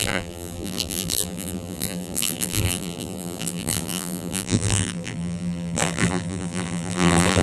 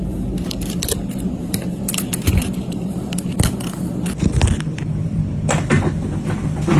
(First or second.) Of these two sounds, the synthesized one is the first